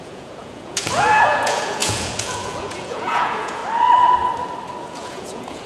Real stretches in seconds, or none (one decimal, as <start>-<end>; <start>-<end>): 3.6-4.8